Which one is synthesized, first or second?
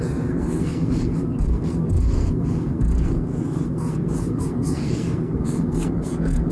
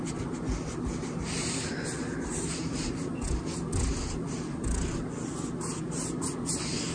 first